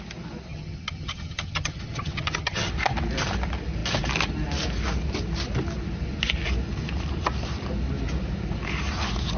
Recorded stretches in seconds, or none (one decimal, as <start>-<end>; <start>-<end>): 0.0-0.5; 2.7-9.4